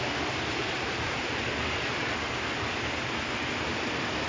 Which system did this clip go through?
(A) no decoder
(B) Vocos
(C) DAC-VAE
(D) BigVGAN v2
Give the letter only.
A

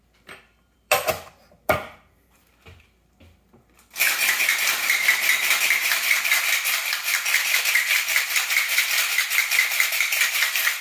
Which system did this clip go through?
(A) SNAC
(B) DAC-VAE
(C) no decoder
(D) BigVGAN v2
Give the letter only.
D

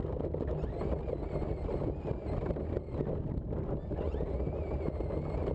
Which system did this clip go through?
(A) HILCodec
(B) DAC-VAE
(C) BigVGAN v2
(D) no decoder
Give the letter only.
D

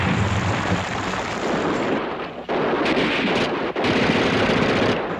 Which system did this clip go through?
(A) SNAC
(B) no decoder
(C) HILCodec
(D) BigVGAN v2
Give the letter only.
B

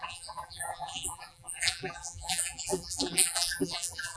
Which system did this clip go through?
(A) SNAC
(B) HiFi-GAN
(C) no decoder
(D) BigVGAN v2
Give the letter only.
D